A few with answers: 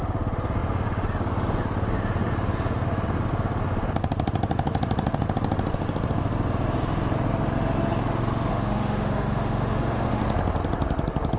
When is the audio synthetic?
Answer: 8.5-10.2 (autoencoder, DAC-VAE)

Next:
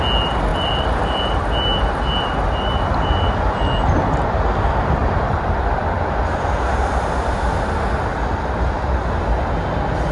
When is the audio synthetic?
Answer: 0.5-1.2 (vocoder, BigVGAN v2); 5.0-6.1; 8.1-9.0

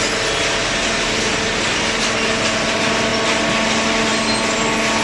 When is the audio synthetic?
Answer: none

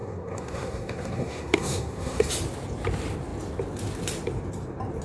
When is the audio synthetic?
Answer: 0.0-2.3 (codec, SNAC)

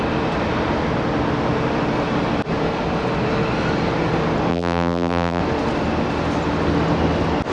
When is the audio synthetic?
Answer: 4.5-5.4 (vocoder, BigVGAN v2)

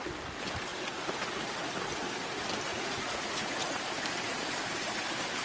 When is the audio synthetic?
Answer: 0.7-1.6 (vocoder, Vocos); 2.7-3.8

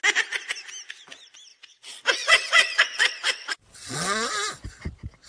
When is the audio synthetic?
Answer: 1.5-4.3 (vocoder, WaveNeXt)